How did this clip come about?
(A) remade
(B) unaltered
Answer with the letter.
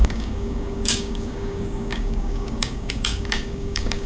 A